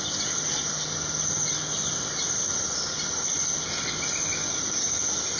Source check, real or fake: real